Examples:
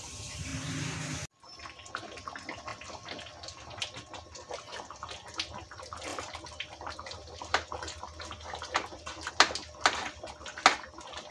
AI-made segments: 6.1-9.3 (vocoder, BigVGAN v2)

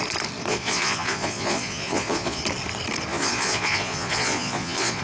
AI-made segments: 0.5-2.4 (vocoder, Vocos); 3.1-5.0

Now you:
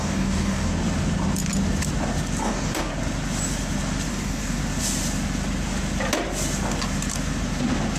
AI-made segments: 0.0-0.7 (codec, DAC); 2.4-2.9; 4.1-4.6